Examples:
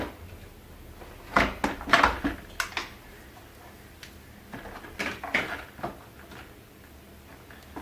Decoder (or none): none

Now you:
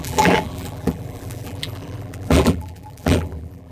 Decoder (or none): vocoder, BigVGAN v2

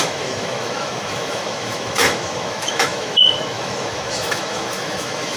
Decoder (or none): autoencoder, DAC-VAE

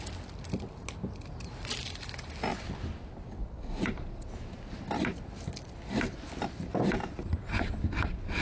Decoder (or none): none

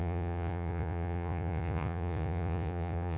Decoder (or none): vocoder, Vocos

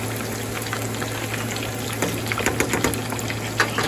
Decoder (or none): none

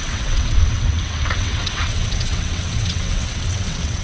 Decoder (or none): vocoder, WaveNeXt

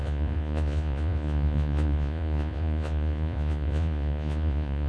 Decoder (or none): vocoder, Vocos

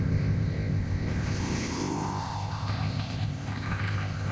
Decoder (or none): codec, ZipCodec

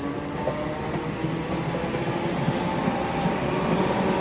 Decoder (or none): none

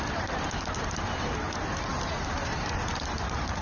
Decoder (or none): vocoder, BigVGAN v2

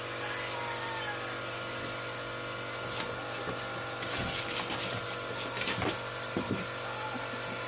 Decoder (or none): none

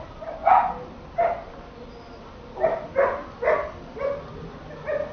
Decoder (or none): none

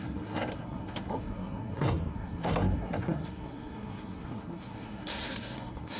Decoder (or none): codec, SNAC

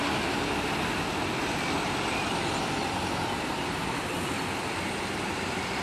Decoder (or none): none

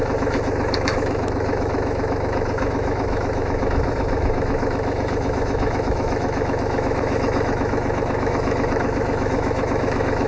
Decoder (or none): autoencoder, DAC-VAE